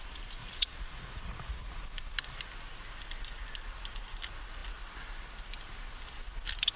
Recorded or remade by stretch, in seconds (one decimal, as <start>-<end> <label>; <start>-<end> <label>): 0.0-0.4 recorded; 0.4-1.8 remade; 1.8-6.8 recorded